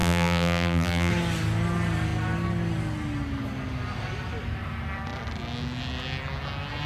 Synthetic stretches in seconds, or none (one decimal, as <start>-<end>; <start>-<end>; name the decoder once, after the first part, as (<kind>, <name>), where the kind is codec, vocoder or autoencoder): 0.0-1.1 (vocoder, BigVGAN v2)